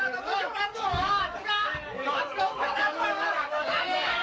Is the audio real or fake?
fake